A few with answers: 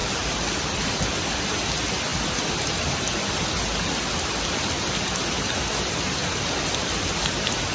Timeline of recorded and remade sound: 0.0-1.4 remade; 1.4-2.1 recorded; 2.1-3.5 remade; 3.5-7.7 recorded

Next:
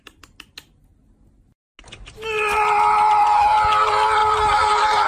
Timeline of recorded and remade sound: 0.0-4.2 recorded; 4.2-5.1 remade

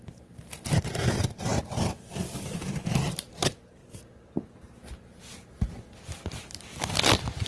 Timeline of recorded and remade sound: 0.0-3.8 remade; 3.8-7.5 recorded